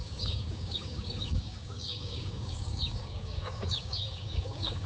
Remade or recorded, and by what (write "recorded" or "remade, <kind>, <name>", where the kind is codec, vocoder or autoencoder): remade, codec, DAC